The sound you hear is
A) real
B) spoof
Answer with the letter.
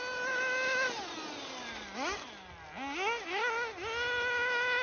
A